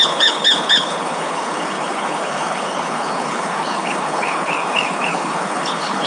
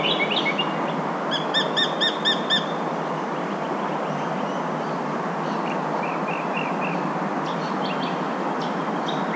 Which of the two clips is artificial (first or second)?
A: first